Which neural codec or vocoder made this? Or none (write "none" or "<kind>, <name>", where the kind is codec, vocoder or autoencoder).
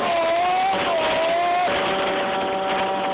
none